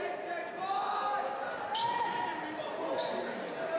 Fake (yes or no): no